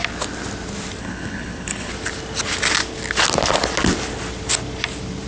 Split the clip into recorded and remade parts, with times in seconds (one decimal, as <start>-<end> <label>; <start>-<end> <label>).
0.0-1.0 recorded; 1.0-1.9 remade; 1.9-5.3 recorded